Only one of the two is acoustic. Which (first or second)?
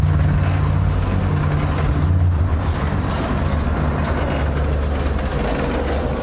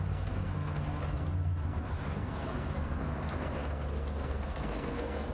first